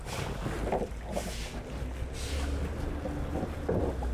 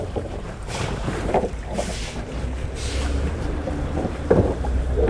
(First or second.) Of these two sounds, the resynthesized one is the second